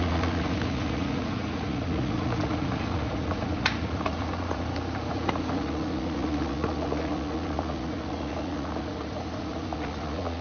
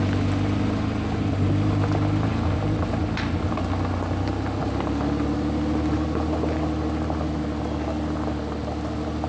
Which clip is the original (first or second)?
second